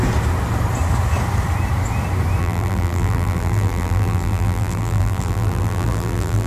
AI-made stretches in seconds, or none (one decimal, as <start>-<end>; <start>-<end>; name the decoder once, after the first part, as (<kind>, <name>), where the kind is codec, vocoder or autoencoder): 2.4-6.5 (vocoder, BigVGAN v2)